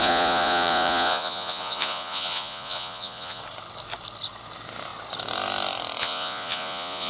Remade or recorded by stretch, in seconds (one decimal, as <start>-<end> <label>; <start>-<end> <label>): 0.0-3.4 remade; 3.4-6.0 recorded; 6.0-7.1 remade